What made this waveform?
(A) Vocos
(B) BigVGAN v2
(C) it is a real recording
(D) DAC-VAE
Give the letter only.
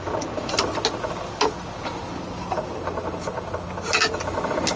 C